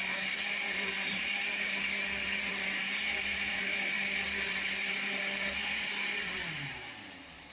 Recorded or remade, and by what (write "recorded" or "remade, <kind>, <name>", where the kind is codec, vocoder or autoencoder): remade, vocoder, BigVGAN v2